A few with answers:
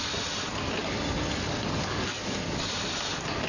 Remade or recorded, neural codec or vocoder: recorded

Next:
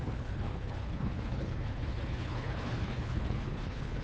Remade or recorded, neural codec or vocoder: remade, codec, HILCodec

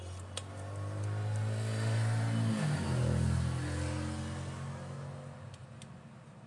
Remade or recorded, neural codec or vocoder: recorded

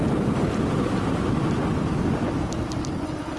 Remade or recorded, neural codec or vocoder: recorded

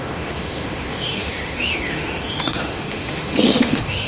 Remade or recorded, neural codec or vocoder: remade, autoencoder, DAC-VAE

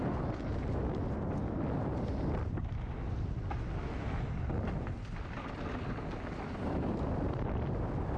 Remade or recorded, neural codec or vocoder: recorded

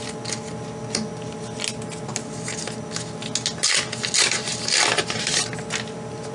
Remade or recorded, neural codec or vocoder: recorded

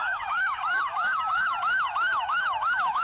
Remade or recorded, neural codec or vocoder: remade, autoencoder, DAC-VAE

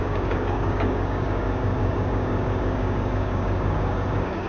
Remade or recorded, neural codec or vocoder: remade, codec, DAC